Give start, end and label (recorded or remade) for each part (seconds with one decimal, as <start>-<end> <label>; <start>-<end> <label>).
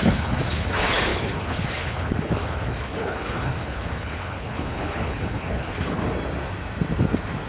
0.0-6.0 remade; 6.0-7.5 recorded